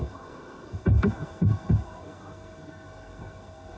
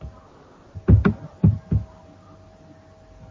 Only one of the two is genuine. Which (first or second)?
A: second